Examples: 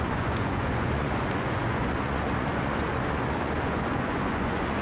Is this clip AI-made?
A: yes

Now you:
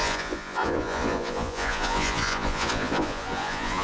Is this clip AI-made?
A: yes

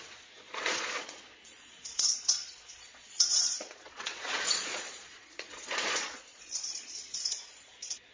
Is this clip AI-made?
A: yes